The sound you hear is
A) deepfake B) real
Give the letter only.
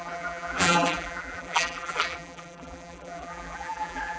A